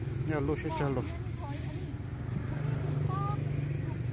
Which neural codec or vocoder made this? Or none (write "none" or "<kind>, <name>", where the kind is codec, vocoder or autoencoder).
none